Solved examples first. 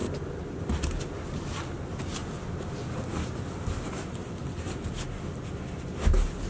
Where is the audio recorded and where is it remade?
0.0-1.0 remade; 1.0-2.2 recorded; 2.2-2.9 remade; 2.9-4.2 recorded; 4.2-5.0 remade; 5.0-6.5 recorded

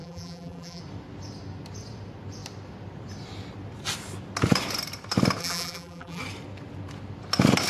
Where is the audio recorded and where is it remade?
0.0-0.8 remade; 0.8-5.4 recorded; 5.4-6.2 remade; 6.2-7.7 recorded

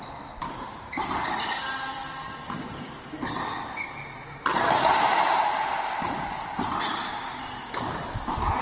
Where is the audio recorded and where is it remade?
0.0-0.4 recorded; 0.4-1.7 remade; 1.7-4.5 recorded; 4.5-6.7 remade; 6.7-8.6 recorded

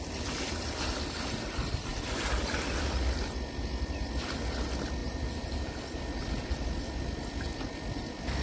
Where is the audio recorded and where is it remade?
0.0-5.0 recorded; 5.0-5.8 remade; 5.8-8.4 recorded